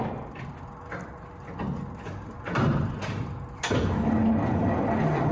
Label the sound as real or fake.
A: real